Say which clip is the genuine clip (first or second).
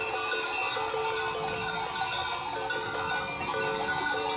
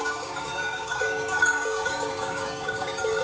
first